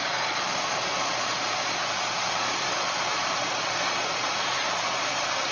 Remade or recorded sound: remade